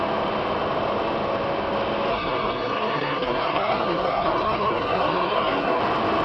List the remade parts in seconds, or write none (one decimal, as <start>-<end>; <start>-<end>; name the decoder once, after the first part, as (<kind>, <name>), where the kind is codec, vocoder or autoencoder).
2.1-5.8 (codec, SNAC)